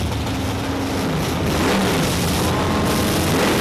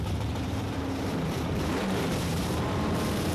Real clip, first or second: first